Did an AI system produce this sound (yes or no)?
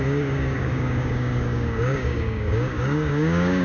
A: yes